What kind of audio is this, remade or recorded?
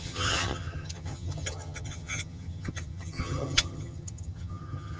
remade